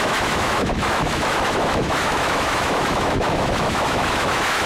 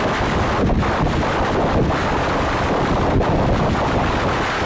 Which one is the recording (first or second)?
second